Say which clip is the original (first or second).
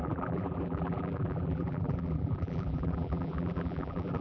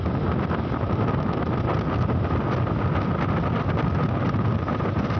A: second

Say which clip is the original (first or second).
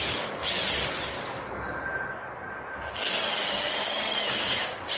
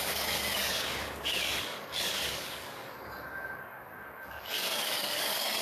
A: first